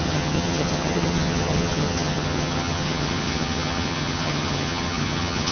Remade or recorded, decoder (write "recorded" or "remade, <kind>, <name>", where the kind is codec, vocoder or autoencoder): remade, vocoder, HiFi-GAN